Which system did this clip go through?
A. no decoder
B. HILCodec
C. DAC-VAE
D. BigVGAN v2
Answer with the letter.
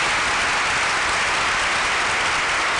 A